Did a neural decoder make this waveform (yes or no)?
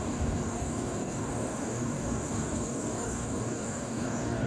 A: yes